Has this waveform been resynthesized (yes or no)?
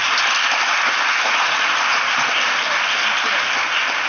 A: no